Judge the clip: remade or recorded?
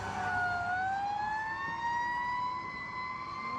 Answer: recorded